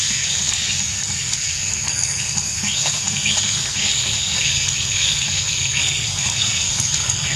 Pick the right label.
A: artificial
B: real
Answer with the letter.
A